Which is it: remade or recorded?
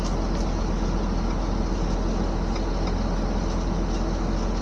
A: recorded